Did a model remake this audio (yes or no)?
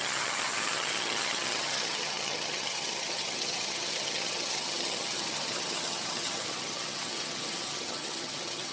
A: yes